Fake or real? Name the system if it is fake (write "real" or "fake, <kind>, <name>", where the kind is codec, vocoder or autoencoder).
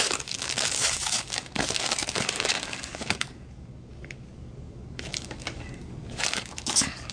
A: fake, codec, DAC